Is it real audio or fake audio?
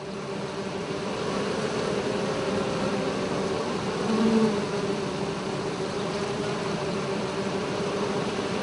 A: fake